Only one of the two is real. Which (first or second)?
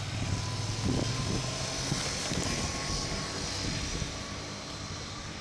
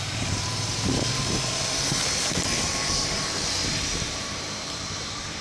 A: first